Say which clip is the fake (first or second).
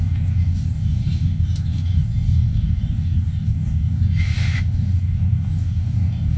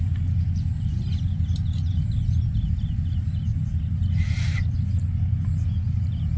first